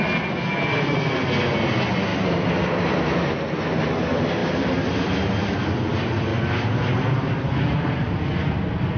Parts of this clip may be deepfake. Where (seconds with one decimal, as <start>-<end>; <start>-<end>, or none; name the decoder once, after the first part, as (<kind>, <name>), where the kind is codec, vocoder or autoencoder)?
none